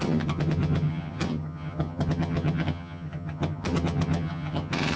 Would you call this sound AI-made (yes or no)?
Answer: yes